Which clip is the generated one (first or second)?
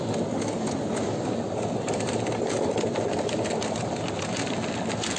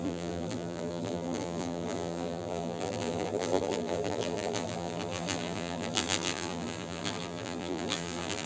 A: second